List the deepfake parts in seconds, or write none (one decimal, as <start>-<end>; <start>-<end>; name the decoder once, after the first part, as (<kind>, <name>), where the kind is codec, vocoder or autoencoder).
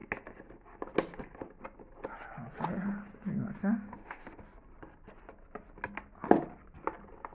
3.6-4.4 (autoencoder, DAC-VAE)